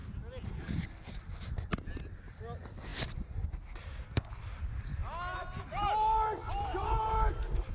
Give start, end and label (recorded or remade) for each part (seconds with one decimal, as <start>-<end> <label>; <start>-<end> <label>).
0.0-7.7 recorded